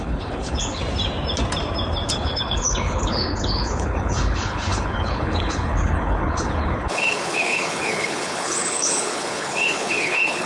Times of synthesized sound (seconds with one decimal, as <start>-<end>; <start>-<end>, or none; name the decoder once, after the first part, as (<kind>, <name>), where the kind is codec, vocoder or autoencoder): 0.0-0.8 (codec, HILCodec); 2.1-10.5